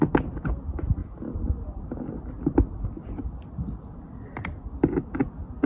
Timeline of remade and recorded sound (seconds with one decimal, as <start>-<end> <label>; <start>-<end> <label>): 0.0-5.7 recorded